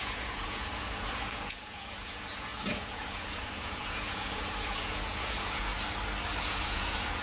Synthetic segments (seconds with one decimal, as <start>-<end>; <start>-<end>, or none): 0.0-5.7; 6.4-7.2